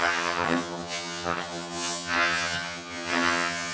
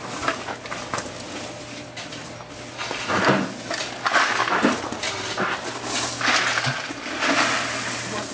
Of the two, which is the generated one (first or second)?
first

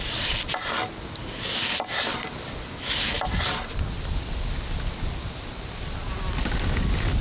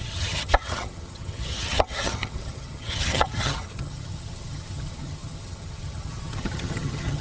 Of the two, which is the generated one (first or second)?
second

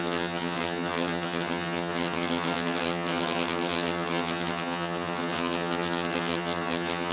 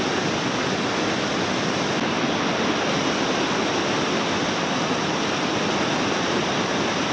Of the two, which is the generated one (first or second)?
first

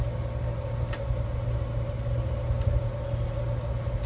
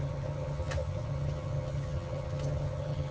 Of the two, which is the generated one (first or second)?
second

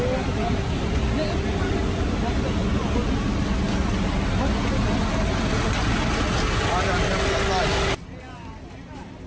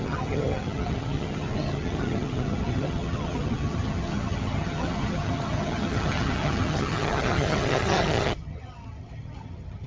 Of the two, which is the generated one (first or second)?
second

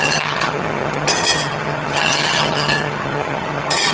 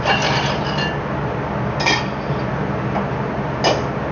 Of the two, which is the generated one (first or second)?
first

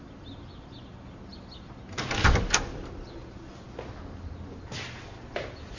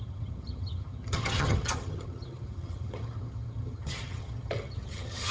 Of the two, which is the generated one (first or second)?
second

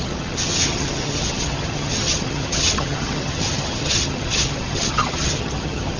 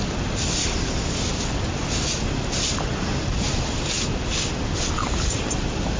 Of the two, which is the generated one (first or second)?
first